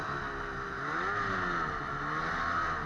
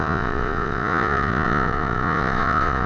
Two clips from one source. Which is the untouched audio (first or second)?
first